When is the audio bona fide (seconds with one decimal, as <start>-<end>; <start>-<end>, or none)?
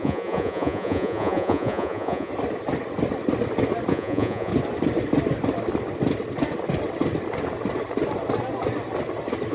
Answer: 2.3-3.9; 4.5-9.5